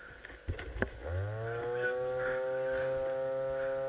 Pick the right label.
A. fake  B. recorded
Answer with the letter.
B